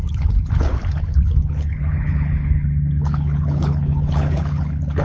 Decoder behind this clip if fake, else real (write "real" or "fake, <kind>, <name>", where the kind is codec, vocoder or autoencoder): fake, codec, HILCodec